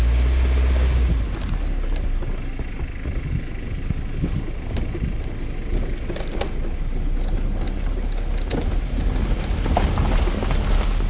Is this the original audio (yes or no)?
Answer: yes